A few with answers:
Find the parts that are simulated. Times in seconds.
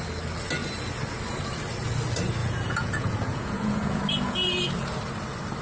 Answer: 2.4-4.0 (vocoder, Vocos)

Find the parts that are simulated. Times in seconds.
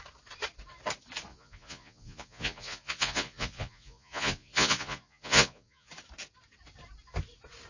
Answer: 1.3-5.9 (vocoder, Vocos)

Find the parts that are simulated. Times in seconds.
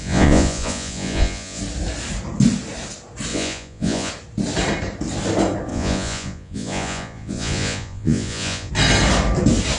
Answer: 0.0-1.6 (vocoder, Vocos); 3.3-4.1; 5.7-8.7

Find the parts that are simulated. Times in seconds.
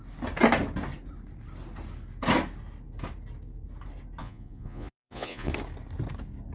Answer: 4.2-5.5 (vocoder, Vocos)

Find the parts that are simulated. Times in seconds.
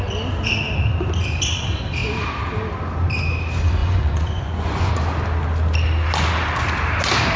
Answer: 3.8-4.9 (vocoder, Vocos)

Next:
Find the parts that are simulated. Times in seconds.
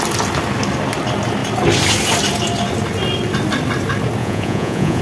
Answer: 4.2-5.0 (vocoder, Vocos)